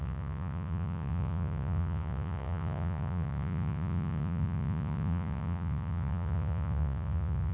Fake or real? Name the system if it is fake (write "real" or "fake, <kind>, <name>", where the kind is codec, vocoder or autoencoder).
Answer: fake, vocoder, Vocos